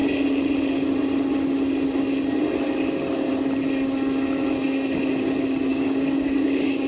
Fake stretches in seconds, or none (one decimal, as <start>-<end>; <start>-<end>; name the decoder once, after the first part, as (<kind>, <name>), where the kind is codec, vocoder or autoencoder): 5.7-6.9 (codec, DAC)